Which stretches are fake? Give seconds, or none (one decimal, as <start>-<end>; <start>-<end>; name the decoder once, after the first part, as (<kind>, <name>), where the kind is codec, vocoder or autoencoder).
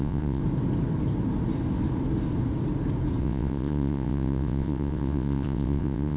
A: 0.0-0.4 (vocoder, WaveNeXt); 3.2-6.2